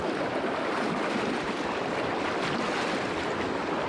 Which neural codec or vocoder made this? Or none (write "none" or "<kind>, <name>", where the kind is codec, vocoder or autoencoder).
none